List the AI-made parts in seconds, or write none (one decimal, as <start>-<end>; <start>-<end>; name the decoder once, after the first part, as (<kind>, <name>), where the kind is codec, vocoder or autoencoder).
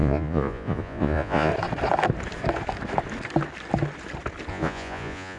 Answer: 0.0-1.5 (vocoder, Vocos); 4.5-5.4